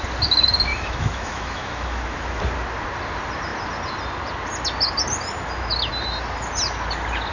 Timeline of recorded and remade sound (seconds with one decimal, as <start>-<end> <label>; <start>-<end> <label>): 0.0-0.7 recorded; 0.7-2.4 remade; 2.4-7.3 recorded